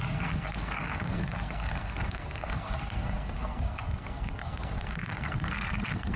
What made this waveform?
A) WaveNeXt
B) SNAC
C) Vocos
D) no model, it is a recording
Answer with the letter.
B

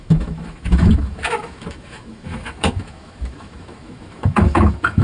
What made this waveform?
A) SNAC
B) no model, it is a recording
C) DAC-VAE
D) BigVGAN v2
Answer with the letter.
C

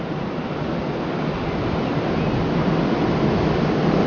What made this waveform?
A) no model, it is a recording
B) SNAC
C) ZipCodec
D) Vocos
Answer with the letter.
A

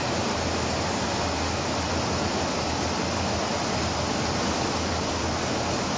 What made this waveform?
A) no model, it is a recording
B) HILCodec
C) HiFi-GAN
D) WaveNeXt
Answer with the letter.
A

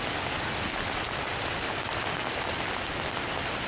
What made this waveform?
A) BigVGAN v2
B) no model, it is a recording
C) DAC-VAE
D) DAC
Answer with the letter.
B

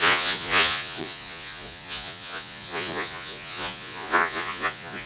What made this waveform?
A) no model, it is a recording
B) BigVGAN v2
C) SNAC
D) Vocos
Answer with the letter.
D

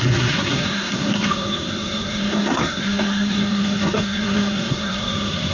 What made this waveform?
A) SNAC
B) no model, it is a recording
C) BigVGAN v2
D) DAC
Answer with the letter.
A